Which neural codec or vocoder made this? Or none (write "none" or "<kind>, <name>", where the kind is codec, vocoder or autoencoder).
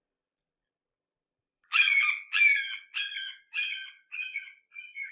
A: vocoder, BigVGAN v2